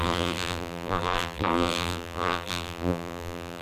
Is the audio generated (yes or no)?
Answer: yes